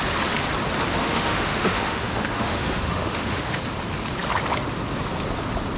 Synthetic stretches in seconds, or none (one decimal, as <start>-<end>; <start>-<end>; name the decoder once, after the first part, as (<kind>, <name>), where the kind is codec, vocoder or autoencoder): 0.9-3.6 (autoencoder, DAC-VAE)